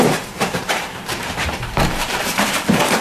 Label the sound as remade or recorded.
remade